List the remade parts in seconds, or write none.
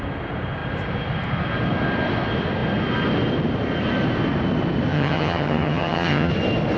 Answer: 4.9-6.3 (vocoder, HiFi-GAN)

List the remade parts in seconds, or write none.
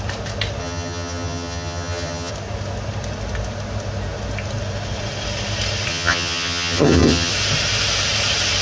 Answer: 0.6-2.3 (vocoder, HiFi-GAN); 5.9-7.3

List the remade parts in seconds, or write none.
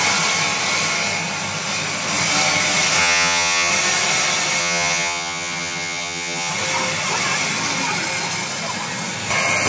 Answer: 3.0-3.7 (vocoder, HiFi-GAN); 4.6-6.5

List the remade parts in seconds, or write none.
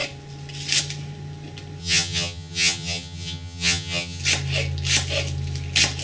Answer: 1.8-4.2 (vocoder, HiFi-GAN)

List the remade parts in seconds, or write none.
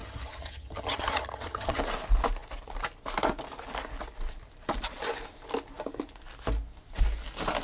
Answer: 0.0-1.8 (vocoder, HiFi-GAN)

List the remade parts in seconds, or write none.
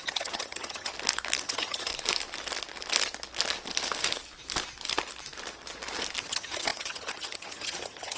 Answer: 0.0-0.9 (vocoder, HiFi-GAN); 1.4-1.9; 6.2-8.2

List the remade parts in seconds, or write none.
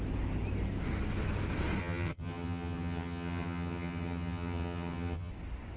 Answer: 1.8-5.3 (vocoder, HiFi-GAN)